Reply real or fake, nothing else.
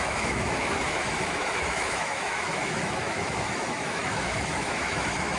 fake